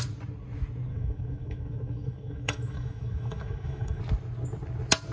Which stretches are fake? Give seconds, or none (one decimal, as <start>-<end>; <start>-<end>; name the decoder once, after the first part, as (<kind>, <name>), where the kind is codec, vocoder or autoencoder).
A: 0.9-4.0 (autoencoder, DAC-VAE)